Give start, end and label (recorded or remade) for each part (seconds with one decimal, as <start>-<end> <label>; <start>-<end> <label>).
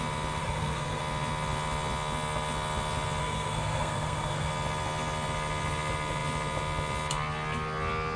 0.0-0.4 recorded; 0.4-1.0 remade; 1.0-3.2 recorded; 3.2-4.5 remade; 4.5-8.2 recorded